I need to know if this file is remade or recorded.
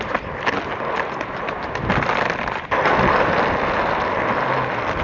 recorded